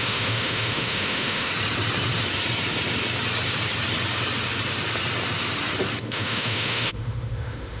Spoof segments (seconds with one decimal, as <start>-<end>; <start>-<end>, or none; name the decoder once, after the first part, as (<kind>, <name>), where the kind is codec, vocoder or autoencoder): 0.0-1.5 (autoencoder, DAC-VAE); 6.0-7.8